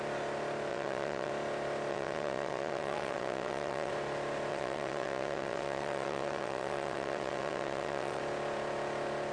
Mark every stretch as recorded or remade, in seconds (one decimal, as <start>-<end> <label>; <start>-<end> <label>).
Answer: 0.0-0.7 recorded; 0.7-1.3 remade; 1.3-1.9 recorded; 1.9-3.9 remade; 3.9-4.5 recorded; 4.5-8.2 remade; 8.2-9.3 recorded